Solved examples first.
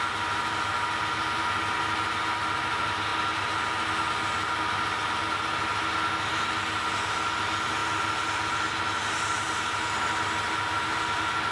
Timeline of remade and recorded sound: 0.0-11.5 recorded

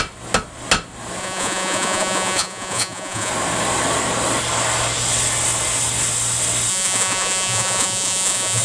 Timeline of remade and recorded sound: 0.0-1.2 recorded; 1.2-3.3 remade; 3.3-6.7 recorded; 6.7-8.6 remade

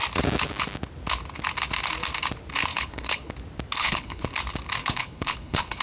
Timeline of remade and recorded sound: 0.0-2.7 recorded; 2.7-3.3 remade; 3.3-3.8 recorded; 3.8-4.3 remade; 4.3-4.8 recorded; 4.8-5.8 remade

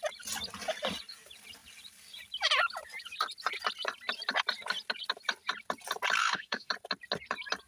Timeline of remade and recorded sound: 0.0-6.2 recorded; 6.2-6.7 remade; 6.7-7.7 recorded

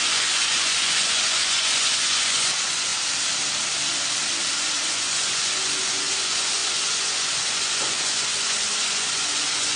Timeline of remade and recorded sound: 0.0-2.9 remade; 2.9-4.6 recorded; 4.6-9.8 remade

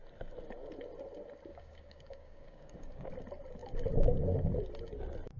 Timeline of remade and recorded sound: 0.0-1.5 recorded; 1.5-3.1 remade; 3.1-5.4 recorded

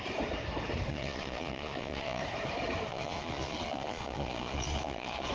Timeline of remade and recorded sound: 0.0-0.9 recorded; 0.9-2.2 remade; 2.2-2.9 recorded; 2.9-5.3 remade